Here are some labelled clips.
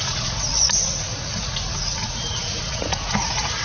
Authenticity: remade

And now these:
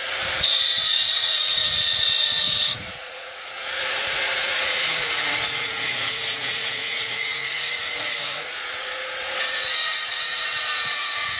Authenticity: remade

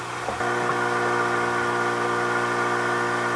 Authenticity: recorded